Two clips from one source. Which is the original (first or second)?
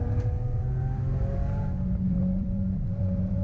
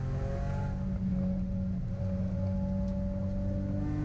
second